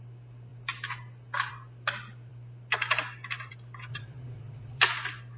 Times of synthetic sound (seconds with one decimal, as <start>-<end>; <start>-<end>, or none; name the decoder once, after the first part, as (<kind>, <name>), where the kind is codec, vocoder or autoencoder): 3.9-4.8 (vocoder, Vocos)

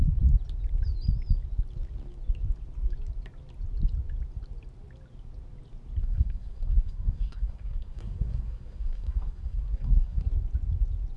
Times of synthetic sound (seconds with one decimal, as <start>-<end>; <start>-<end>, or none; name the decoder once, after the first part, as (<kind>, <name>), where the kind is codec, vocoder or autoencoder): 6.0-10.3 (codec, SNAC)

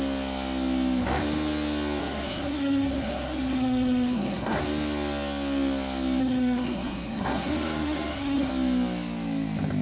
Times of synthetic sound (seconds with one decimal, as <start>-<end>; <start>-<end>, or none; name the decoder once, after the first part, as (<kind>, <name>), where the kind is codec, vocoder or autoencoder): 2.0-4.6 (codec, SNAC); 6.2-8.5